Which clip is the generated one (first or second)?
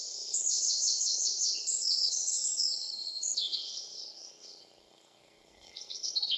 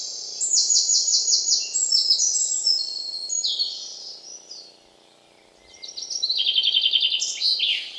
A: first